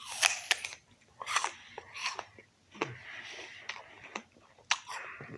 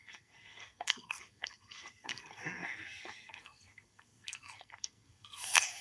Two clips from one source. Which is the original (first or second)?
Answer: first